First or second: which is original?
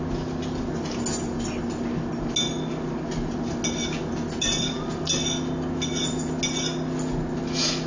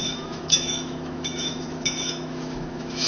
first